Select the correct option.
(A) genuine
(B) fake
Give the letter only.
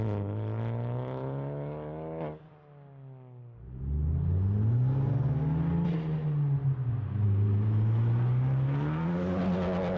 A